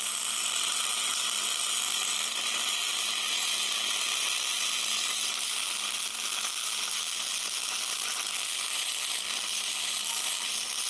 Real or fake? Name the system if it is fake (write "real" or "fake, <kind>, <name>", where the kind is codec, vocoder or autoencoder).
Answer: real